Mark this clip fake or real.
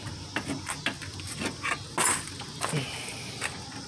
real